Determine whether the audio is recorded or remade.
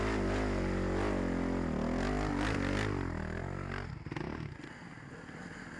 recorded